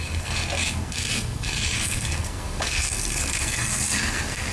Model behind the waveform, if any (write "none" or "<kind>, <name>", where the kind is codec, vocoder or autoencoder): codec, SNAC